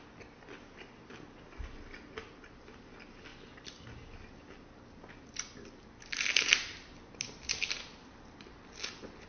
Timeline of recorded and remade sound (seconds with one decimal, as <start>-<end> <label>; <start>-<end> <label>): 0.0-9.3 recorded